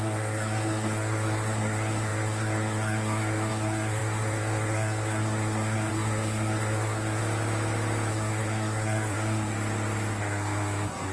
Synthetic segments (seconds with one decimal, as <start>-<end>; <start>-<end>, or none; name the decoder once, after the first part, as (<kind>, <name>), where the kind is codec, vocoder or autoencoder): 0.0-7.2 (codec, SNAC); 8.1-9.5; 10.2-11.1